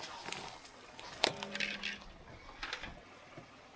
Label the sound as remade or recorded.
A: recorded